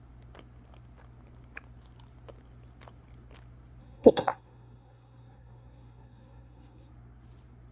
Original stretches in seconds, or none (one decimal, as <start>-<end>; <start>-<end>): 0.0-3.8; 6.9-7.7